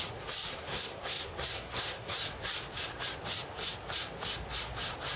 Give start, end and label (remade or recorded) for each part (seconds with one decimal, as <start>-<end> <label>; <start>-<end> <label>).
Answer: 0.0-0.5 recorded; 0.5-2.2 remade; 2.2-5.2 recorded